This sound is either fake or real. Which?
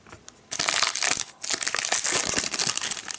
real